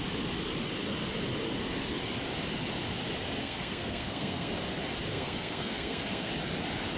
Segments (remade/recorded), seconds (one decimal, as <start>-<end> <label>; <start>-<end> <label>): 0.0-3.4 recorded; 3.4-4.5 remade; 4.5-5.1 recorded; 5.1-6.3 remade; 6.3-7.0 recorded